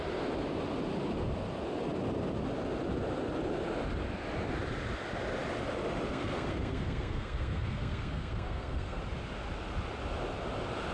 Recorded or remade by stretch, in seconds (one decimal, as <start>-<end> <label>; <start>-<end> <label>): 0.0-6.1 recorded; 6.1-9.0 remade; 9.0-10.9 recorded